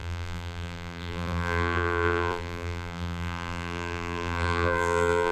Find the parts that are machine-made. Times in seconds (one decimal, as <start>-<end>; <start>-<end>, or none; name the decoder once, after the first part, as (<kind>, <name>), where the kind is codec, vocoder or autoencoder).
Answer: 0.0-5.3 (vocoder, BigVGAN v2)

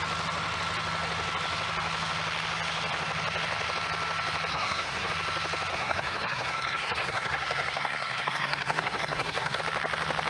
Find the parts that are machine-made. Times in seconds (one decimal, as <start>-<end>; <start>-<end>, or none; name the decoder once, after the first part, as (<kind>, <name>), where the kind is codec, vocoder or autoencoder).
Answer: 4.5-5.1 (codec, SNAC); 5.7-9.6

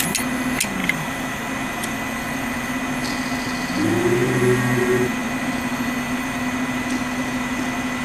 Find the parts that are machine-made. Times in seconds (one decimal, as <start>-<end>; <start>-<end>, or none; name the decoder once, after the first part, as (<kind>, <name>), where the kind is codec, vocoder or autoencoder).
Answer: 0.8-1.4 (vocoder, BigVGAN v2)

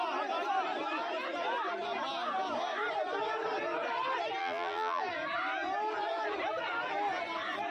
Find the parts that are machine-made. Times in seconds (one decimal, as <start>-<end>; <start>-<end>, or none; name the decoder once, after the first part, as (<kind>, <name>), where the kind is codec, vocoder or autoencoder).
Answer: 4.4-5.0 (vocoder, BigVGAN v2)

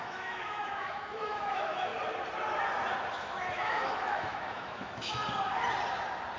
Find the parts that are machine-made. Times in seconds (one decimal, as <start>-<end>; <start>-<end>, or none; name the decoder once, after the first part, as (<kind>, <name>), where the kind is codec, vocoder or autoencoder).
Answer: 0.0-1.9 (autoencoder, DAC-VAE); 3.1-5.2